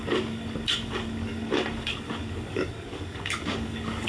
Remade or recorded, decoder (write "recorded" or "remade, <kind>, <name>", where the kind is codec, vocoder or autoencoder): remade, codec, DAC